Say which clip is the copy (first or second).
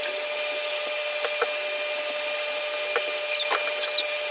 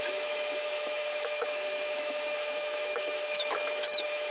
second